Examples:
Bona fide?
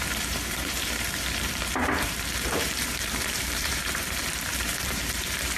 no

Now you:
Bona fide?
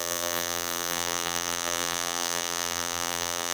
no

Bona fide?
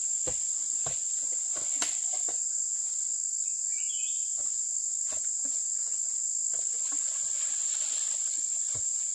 yes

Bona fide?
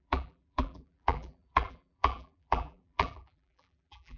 no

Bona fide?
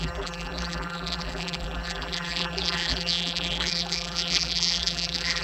no